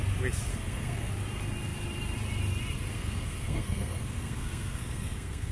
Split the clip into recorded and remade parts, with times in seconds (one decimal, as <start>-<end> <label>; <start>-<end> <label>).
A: 0.0-0.5 recorded; 0.5-1.1 remade; 1.1-2.9 recorded; 2.9-5.5 remade